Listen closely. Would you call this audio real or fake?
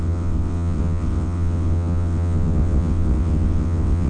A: fake